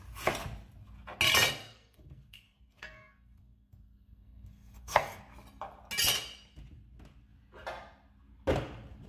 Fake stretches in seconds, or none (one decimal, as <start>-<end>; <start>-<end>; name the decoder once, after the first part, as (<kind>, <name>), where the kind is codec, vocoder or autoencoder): 1.6-5.2 (codec, SNAC)